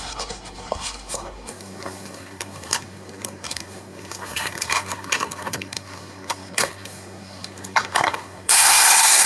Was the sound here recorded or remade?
remade